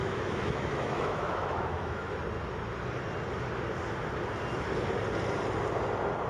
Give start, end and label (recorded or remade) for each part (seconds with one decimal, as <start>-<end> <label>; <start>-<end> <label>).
0.0-2.1 remade; 2.1-6.3 recorded